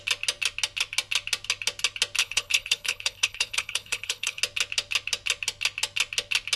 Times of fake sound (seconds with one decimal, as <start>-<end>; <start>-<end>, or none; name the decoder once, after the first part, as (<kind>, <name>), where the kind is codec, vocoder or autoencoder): 2.2-4.4 (codec, HILCodec)